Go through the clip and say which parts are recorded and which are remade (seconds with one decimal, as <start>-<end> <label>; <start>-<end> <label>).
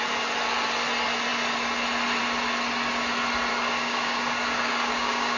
0.0-3.5 recorded; 3.5-5.4 remade